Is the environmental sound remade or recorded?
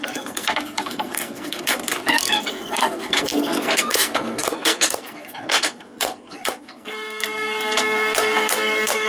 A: remade